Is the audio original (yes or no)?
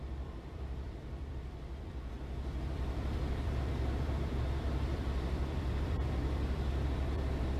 no